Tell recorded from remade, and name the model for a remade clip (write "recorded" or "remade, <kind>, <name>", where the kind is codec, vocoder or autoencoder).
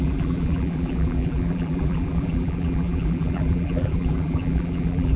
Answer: remade, vocoder, BigVGAN v2